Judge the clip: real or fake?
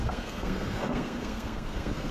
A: fake